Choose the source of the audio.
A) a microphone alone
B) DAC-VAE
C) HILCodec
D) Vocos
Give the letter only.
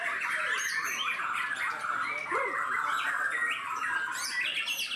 A